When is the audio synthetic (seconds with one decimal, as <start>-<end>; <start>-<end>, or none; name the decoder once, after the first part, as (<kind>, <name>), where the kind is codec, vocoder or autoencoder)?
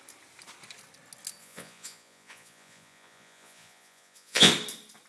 1.4-4.5 (vocoder, Vocos)